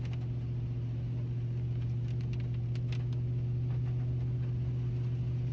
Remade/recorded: recorded